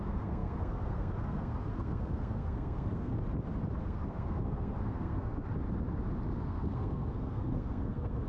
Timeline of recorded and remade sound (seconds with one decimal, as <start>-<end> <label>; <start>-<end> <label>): 0.0-3.1 remade; 3.1-3.8 recorded; 3.8-5.5 remade; 5.5-6.4 recorded; 6.4-8.3 remade